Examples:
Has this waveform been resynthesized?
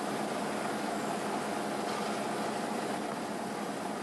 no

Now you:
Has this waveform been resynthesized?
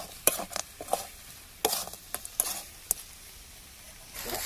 no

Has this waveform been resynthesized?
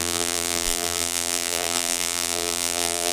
yes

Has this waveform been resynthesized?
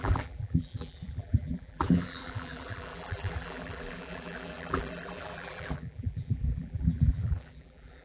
yes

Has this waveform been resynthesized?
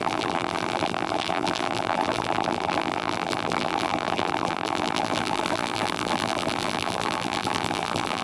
yes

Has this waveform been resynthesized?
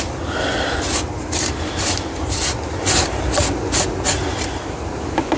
no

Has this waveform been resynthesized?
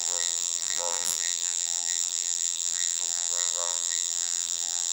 yes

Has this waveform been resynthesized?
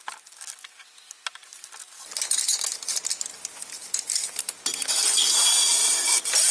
no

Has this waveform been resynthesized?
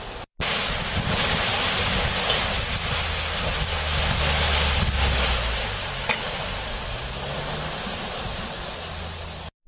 no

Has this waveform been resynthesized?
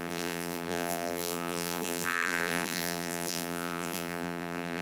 yes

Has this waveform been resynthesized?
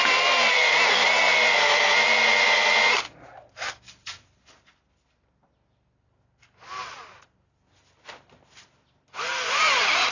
no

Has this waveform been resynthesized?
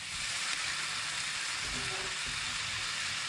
no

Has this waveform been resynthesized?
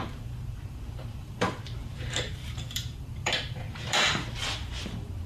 yes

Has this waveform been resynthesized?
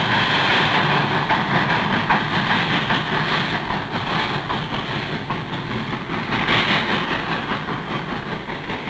no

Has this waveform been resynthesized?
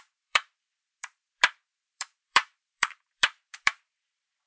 yes